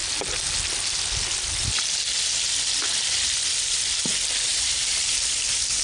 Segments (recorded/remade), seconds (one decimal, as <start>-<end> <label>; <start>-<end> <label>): 0.0-4.5 recorded; 4.5-5.8 remade